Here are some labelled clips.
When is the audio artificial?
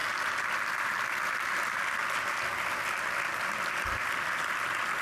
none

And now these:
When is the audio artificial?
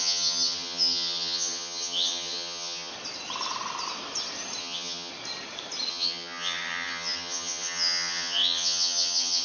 0.0-2.9; 4.6-5.1; 5.9-9.4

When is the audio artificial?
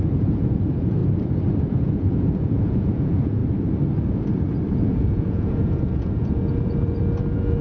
0.0-1.0; 1.7-3.4; 4.7-7.6